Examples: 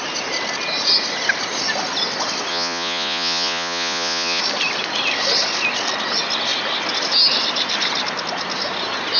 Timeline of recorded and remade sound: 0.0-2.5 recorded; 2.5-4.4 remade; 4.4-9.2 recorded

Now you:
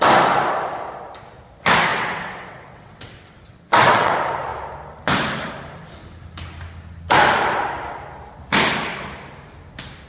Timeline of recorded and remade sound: 0.0-1.9 recorded; 1.9-4.1 remade; 4.1-10.1 recorded

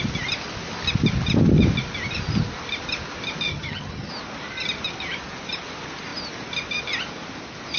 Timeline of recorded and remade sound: 0.0-3.5 recorded; 3.5-4.1 remade; 4.1-7.8 recorded

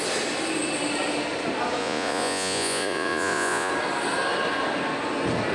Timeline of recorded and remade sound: 0.0-1.8 recorded; 1.8-3.7 remade; 3.7-5.5 recorded